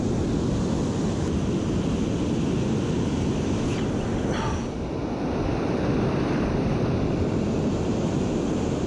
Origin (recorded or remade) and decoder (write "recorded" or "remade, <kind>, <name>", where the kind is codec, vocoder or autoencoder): recorded